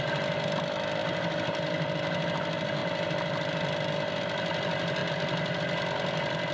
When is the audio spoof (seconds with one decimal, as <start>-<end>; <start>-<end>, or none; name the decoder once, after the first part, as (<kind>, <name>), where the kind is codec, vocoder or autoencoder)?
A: none